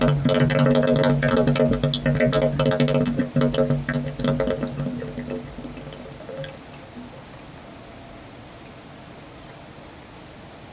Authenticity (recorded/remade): recorded